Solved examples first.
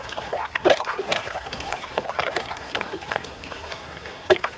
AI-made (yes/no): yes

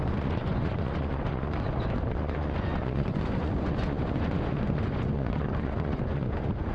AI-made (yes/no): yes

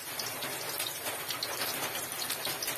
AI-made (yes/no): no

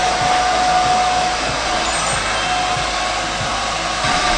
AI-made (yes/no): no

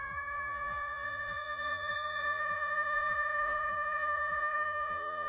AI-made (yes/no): yes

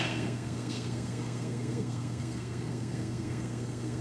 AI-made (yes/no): yes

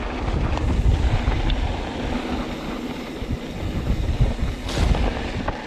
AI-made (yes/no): no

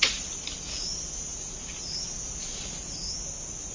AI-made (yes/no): no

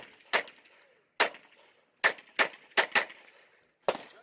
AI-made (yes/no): no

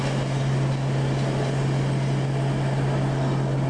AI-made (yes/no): no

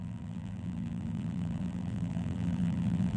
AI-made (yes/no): yes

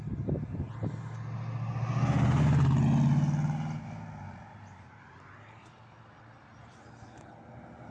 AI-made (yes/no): no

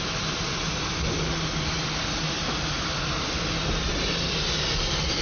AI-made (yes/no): no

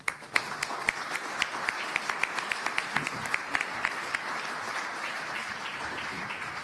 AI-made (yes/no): no